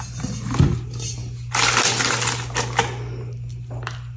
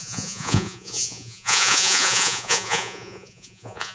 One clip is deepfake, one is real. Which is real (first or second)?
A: first